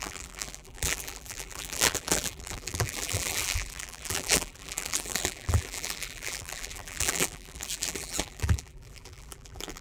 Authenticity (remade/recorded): remade